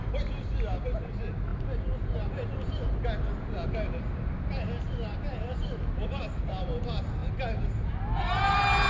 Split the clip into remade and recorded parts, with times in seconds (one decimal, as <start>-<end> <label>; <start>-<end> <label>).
0.0-8.9 recorded